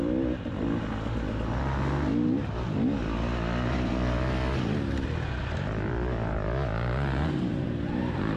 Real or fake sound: real